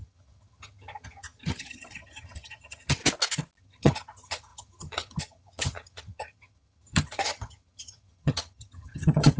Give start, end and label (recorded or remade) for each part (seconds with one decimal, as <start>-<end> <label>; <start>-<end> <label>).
0.0-3.0 remade; 3.0-3.6 recorded; 3.6-9.4 remade